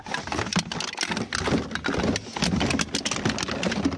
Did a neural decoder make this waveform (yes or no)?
no